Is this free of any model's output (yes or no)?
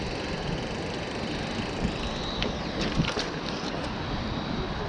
yes